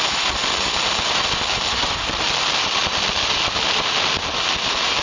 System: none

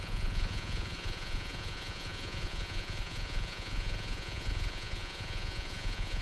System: vocoder, Vocos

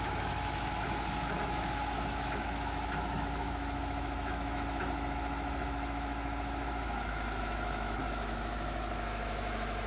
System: autoencoder, DAC-VAE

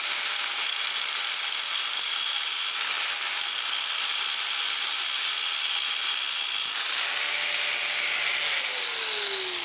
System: none